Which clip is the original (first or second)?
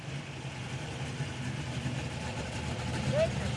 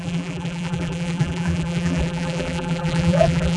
first